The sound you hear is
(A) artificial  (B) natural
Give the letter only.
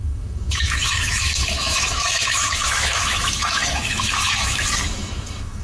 A